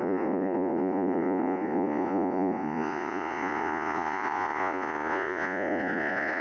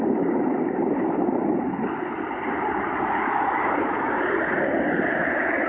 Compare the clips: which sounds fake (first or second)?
first